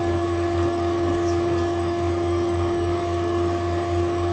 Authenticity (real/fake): fake